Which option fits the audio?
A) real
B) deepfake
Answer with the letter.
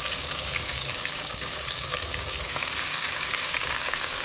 B